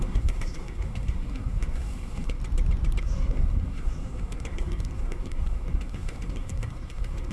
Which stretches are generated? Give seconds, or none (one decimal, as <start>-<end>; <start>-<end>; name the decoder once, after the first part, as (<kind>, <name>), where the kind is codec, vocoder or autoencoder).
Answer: 0.0-2.4 (codec, SNAC); 3.0-7.3